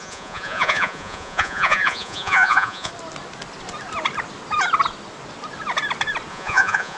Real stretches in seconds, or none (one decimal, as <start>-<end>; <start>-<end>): 2.9-6.3